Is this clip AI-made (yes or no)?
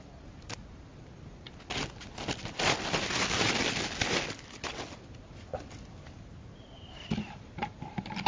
no